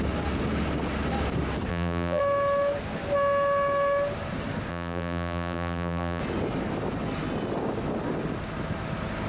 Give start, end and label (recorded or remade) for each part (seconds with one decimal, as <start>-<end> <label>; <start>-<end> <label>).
0.0-1.7 recorded; 1.7-2.2 remade; 2.2-4.7 recorded; 4.7-6.2 remade; 6.2-9.3 recorded